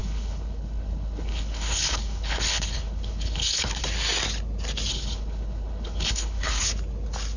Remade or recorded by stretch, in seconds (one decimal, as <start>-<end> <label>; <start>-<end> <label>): 0.0-3.8 remade; 3.8-4.9 recorded; 4.9-6.6 remade; 6.6-7.4 recorded